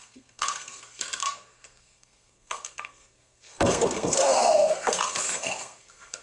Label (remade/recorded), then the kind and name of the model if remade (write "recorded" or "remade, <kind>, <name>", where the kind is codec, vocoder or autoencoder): remade, codec, SNAC